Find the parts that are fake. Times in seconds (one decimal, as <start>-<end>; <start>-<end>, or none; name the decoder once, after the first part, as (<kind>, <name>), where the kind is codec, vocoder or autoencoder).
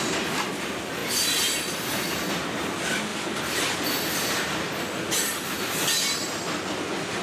none